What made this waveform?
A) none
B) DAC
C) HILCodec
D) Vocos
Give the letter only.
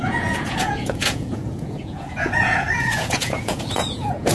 D